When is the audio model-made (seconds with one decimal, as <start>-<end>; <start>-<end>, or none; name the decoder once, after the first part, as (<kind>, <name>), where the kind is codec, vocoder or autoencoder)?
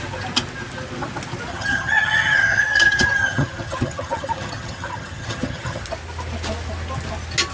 1.5-5.8 (vocoder, HiFi-GAN)